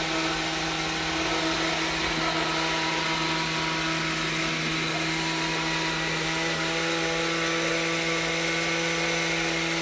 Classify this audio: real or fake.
real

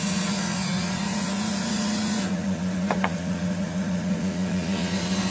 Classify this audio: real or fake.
fake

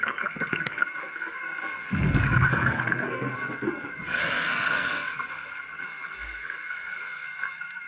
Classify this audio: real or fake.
fake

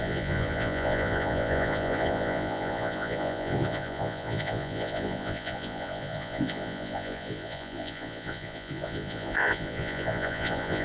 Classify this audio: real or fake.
fake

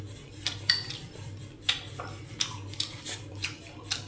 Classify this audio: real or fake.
fake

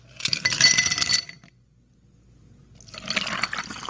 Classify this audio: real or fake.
real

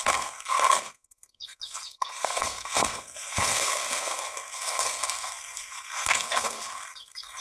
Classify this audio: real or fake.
fake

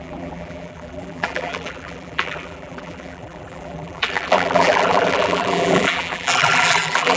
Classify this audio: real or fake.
fake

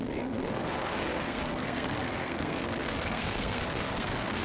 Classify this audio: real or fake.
fake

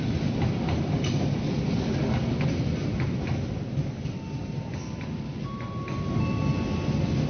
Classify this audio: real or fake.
real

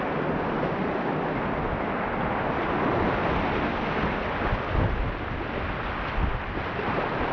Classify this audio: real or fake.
real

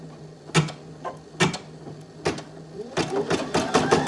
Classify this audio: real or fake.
real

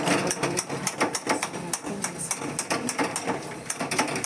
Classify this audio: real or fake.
real